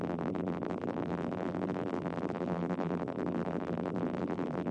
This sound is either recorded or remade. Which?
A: remade